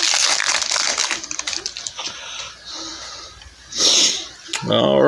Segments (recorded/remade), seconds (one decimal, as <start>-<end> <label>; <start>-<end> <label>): 0.0-5.1 recorded